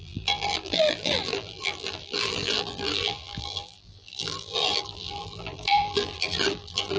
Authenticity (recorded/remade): remade